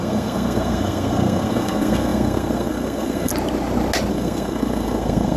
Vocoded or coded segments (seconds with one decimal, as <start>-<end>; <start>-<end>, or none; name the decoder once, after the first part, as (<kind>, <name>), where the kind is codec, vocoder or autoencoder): 0.0-3.3 (codec, SNAC); 4.1-5.4